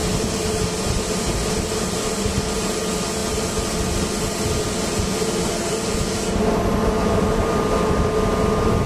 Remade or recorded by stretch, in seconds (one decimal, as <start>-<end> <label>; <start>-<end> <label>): 0.0-8.9 recorded